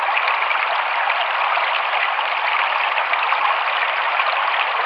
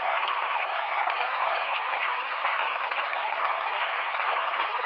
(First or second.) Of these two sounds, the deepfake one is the second